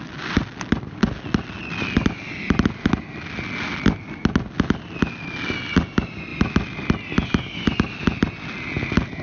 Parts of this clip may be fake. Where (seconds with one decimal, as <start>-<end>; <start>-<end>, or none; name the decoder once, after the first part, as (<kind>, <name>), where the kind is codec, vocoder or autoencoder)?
none